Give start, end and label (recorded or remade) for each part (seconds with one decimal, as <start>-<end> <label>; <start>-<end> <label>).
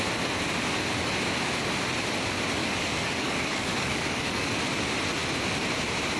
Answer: 0.0-2.6 recorded; 2.6-4.5 remade; 4.5-6.2 recorded